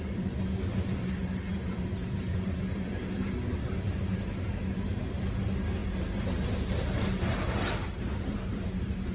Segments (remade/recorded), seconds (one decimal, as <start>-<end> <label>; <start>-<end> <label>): 0.0-9.1 recorded